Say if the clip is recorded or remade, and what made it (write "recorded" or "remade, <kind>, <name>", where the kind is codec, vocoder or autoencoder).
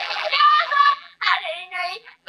remade, vocoder, BigVGAN v2